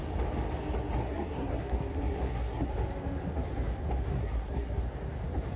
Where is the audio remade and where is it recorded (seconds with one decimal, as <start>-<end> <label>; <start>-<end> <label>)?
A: 0.0-1.0 recorded; 1.0-2.7 remade; 2.7-4.1 recorded; 4.1-4.8 remade; 4.8-5.6 recorded